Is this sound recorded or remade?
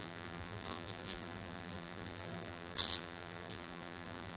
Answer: remade